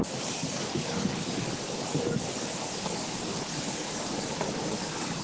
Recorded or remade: remade